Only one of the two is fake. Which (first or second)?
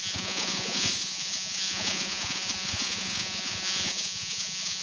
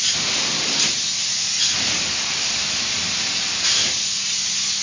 first